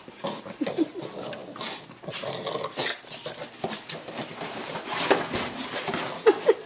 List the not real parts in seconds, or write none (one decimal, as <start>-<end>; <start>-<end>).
none